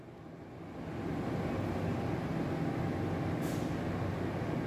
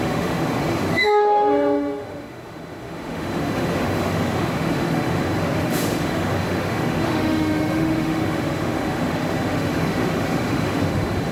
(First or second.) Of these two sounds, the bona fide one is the first